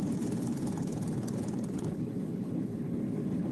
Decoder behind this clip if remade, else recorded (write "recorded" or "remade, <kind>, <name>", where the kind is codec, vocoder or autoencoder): remade, codec, HILCodec